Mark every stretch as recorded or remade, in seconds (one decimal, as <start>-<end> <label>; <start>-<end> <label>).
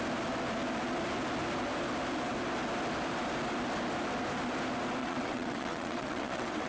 0.0-5.0 recorded; 5.0-6.7 remade